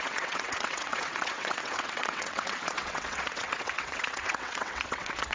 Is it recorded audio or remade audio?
remade